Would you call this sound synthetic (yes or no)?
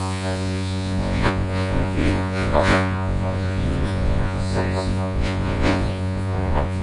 yes